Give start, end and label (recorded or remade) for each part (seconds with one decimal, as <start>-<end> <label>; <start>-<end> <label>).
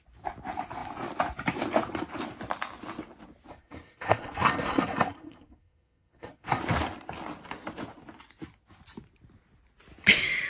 0.0-3.5 recorded; 3.5-6.6 remade; 6.6-10.5 recorded